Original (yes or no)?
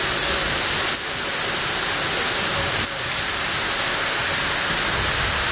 yes